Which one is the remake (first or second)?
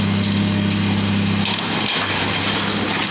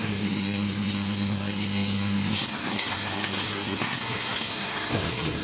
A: second